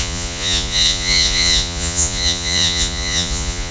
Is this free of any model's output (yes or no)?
no